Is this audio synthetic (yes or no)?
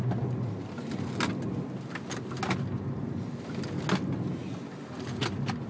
no